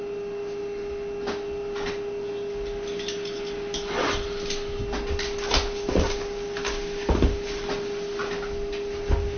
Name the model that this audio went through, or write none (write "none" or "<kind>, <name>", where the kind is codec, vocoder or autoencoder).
none